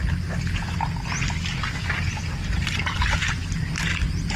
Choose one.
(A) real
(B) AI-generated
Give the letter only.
A